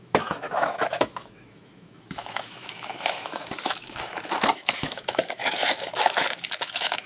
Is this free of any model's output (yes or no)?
no